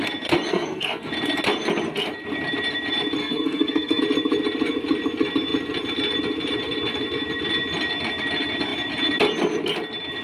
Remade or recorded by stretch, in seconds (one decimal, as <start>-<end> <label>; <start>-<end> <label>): 0.0-0.5 recorded; 0.5-1.1 remade; 1.1-3.2 recorded; 3.2-4.0 remade; 4.0-10.2 recorded